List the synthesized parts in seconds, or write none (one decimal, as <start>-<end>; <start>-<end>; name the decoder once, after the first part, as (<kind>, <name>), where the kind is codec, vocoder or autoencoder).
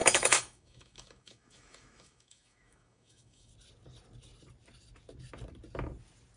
0.0-3.5 (autoencoder, DAC-VAE)